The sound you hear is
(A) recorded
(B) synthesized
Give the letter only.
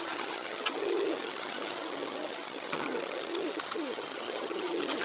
B